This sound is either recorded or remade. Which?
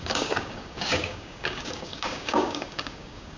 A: remade